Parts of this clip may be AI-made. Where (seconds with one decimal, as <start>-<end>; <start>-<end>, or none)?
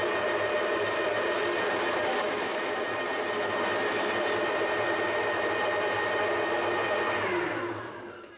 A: 2.1-2.7